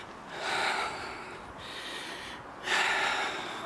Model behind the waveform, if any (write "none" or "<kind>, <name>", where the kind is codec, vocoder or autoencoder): none